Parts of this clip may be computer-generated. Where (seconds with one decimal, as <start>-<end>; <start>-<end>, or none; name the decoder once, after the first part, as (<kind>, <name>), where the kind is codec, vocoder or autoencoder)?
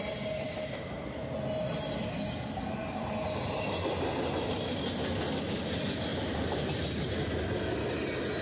6.1-6.8 (vocoder, BigVGAN v2)